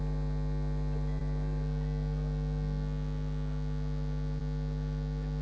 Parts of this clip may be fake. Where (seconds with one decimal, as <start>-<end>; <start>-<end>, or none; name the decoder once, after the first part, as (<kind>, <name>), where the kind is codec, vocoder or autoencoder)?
none